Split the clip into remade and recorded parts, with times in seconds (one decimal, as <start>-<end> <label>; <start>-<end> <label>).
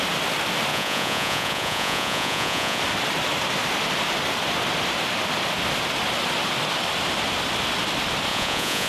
0.0-0.7 recorded; 0.7-2.8 remade; 2.8-8.3 recorded; 8.3-8.9 remade